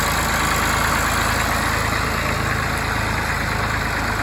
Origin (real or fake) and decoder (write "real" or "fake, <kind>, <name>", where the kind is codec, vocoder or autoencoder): real